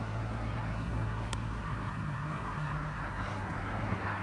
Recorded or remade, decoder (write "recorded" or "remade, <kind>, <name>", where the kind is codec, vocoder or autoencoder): remade, codec, SNAC